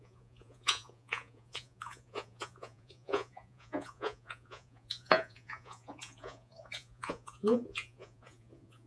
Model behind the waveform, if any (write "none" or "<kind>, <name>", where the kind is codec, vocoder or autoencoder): vocoder, Vocos